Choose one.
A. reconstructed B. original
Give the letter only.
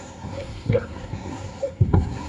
A